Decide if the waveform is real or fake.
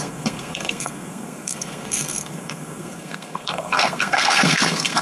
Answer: fake